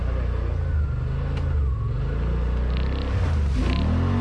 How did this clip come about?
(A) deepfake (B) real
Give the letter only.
B